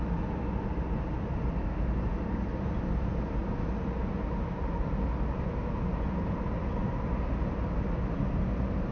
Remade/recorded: recorded